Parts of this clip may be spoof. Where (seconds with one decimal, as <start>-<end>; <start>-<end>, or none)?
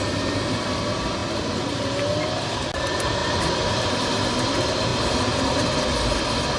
3.2-4.5; 4.9-5.5